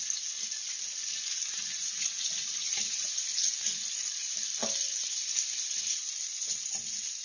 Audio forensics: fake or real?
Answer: real